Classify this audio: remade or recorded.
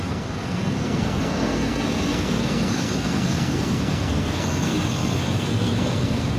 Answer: remade